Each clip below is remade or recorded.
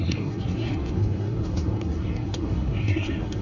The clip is remade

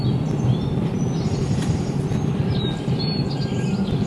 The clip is recorded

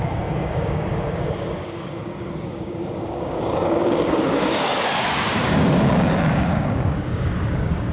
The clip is remade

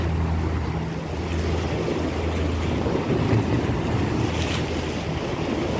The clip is recorded